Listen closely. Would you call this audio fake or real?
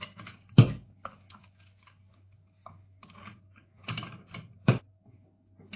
fake